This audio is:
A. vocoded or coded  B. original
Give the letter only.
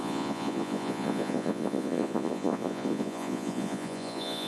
A